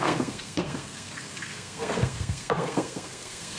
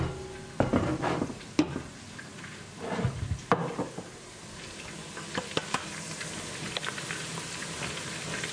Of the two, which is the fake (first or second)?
first